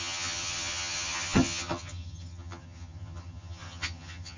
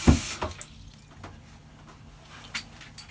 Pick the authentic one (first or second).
second